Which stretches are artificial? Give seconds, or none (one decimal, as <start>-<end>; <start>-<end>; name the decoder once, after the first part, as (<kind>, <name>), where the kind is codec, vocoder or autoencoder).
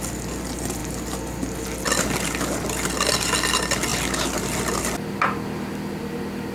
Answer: 3.9-6.0 (vocoder, BigVGAN v2)